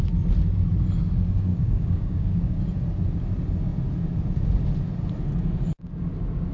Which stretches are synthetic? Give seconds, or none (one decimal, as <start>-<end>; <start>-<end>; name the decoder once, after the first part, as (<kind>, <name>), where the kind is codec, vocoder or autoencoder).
1.5-2.6 (codec, DAC)